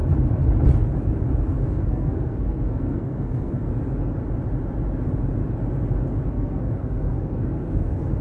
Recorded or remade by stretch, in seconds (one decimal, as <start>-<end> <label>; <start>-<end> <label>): 0.0-1.5 recorded; 1.5-3.7 remade; 3.7-6.3 recorded; 6.3-8.2 remade